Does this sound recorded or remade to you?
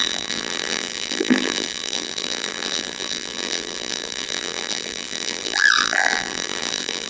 remade